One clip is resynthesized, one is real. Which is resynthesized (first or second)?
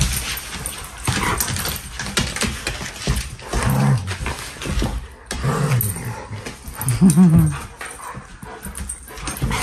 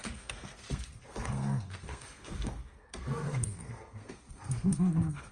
second